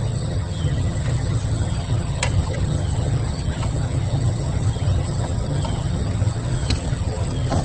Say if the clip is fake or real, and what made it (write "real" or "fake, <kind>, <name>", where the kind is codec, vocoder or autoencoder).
fake, vocoder, HiFi-GAN